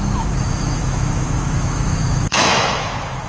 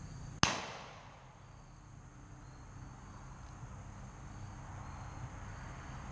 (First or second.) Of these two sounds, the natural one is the second